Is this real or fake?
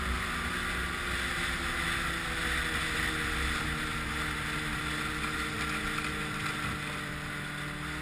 real